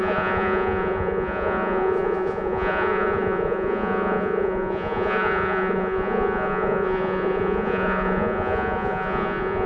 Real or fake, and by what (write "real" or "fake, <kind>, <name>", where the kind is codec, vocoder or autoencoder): fake, vocoder, Vocos